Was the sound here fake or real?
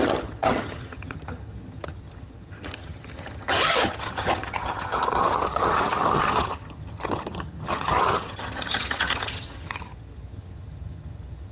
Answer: fake